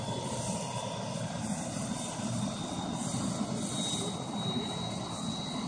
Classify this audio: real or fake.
real